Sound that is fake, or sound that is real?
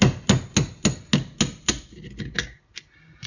real